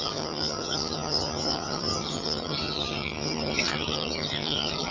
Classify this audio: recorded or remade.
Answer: remade